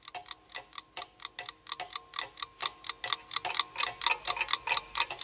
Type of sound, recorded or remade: recorded